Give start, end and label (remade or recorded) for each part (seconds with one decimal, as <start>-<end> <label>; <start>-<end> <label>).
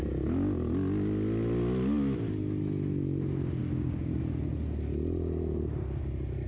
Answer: 0.0-3.6 recorded; 3.6-4.2 remade; 4.2-6.5 recorded